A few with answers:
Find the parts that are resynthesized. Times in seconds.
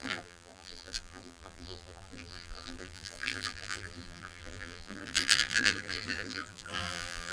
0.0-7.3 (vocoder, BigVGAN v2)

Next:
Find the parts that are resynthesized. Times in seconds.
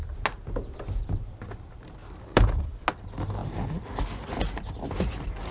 2.0-2.7 (vocoder, BigVGAN v2); 3.4-4.0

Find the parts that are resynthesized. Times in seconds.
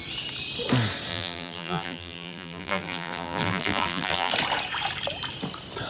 1.1-4.3 (vocoder, BigVGAN v2)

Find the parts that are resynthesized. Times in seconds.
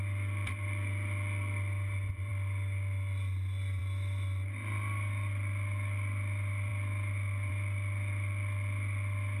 none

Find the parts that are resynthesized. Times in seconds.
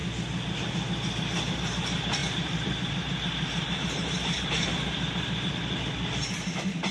2.2-5.5 (vocoder, BigVGAN v2)